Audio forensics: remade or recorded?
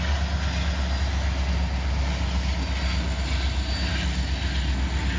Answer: recorded